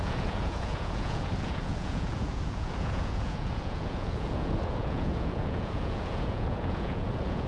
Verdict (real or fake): fake